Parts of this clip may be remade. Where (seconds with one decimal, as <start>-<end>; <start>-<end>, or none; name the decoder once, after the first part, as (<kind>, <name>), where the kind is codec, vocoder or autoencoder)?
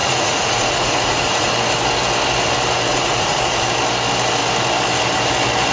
0.0-1.5 (vocoder, Vocos); 2.9-3.4